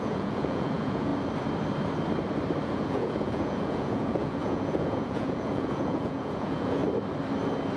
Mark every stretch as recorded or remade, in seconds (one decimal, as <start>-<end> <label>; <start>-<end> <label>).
0.0-1.1 remade; 1.1-2.6 recorded; 2.6-6.8 remade; 6.8-7.8 recorded